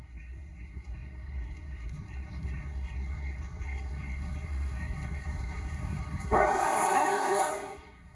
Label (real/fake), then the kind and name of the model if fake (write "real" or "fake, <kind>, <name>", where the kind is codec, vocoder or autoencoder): fake, codec, SNAC